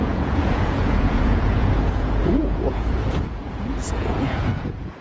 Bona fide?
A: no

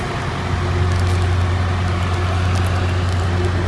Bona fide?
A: yes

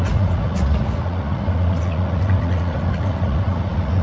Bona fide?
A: no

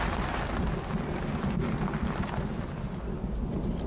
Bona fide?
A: yes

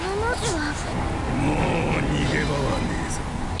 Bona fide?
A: yes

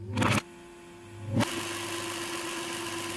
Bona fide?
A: yes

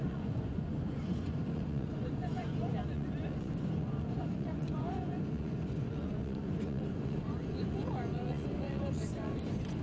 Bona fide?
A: no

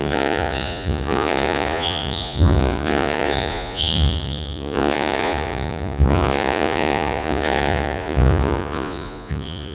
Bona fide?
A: no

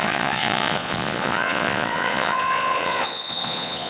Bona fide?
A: no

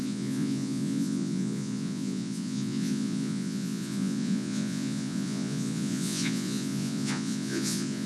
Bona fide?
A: no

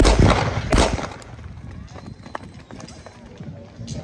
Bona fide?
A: yes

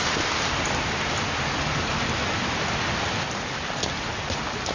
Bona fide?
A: yes